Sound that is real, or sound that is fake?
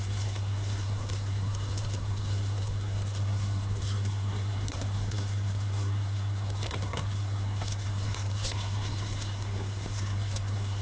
fake